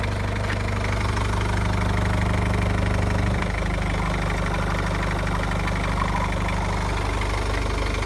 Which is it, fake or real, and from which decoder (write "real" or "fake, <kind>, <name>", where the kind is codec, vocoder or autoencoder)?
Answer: real